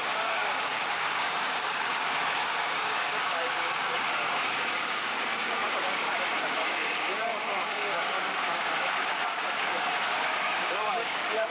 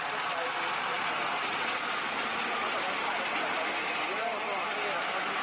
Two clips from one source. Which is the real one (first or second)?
second